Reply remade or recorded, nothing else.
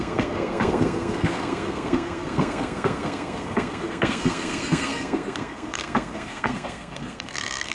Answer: remade